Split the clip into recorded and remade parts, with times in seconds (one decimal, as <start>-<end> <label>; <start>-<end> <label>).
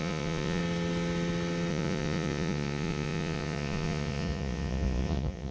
0.0-0.6 remade; 0.6-1.7 recorded; 1.7-5.5 remade